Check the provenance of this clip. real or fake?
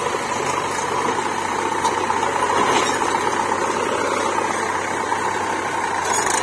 real